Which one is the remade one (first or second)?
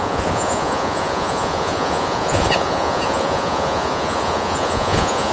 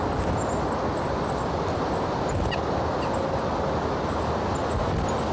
first